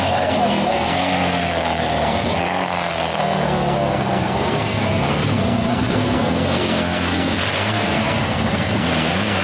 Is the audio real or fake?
fake